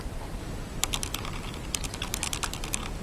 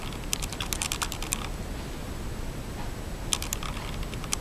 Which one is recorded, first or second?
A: second